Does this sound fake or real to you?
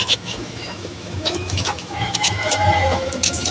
fake